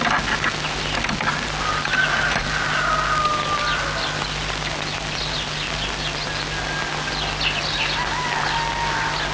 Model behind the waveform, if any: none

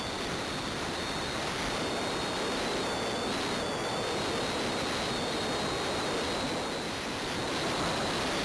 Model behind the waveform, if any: none